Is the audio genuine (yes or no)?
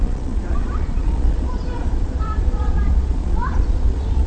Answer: no